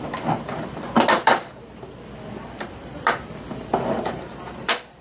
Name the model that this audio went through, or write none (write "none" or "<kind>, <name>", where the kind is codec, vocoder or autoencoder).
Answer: vocoder, BigVGAN v2